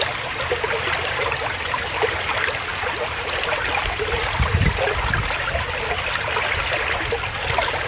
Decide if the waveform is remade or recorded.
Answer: recorded